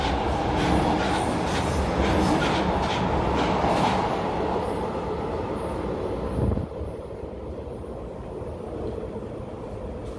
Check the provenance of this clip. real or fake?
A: real